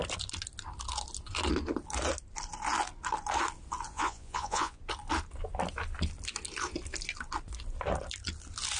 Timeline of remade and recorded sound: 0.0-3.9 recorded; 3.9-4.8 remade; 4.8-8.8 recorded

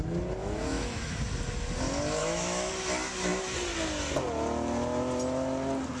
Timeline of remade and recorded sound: 0.0-0.4 recorded; 0.4-1.1 remade; 1.1-2.2 recorded; 2.2-2.7 remade; 2.7-6.0 recorded

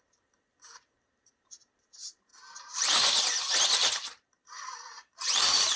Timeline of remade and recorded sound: 0.0-5.8 remade

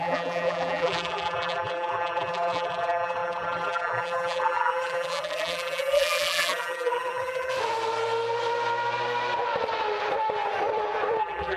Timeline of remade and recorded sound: 0.0-7.5 remade; 7.5-11.2 recorded; 11.2-11.6 remade

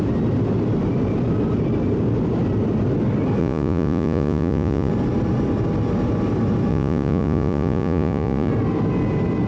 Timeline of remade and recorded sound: 0.0-3.4 recorded; 3.4-4.9 remade; 4.9-6.7 recorded; 6.7-8.5 remade; 8.5-9.5 recorded

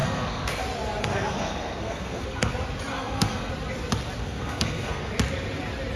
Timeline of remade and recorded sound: 0.0-0.6 remade; 0.6-1.0 recorded; 1.0-2.5 remade; 2.5-2.9 recorded; 2.9-3.5 remade; 3.5-4.2 recorded; 4.2-5.1 remade; 5.1-6.0 recorded

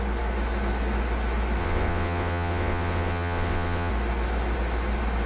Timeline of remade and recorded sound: 0.0-1.6 recorded; 1.6-3.9 remade; 3.9-5.3 recorded